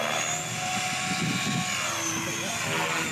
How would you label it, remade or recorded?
recorded